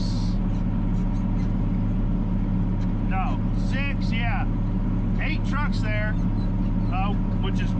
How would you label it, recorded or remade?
recorded